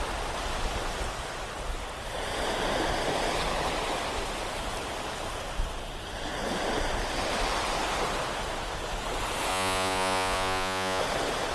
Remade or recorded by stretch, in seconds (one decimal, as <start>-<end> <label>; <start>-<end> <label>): 0.0-9.5 recorded; 9.5-11.0 remade; 11.0-11.5 recorded